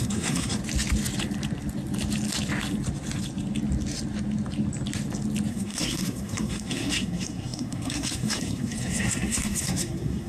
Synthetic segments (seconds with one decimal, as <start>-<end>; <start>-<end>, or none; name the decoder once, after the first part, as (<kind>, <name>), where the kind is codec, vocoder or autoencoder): 0.0-0.6 (codec, SNAC); 5.5-10.3

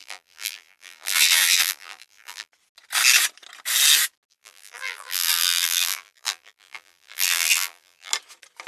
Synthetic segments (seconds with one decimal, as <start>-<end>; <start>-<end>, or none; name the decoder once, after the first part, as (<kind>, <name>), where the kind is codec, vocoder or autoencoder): 0.0-2.5 (vocoder, BigVGAN v2); 4.3-8.1

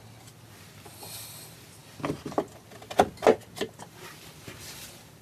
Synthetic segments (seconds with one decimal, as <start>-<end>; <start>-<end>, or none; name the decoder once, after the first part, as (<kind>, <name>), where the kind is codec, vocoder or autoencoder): none

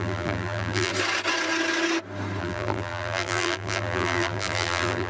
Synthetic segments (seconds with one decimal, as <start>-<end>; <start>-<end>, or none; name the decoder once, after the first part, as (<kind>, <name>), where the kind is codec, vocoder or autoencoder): 0.0-0.9 (vocoder, BigVGAN v2); 2.4-5.1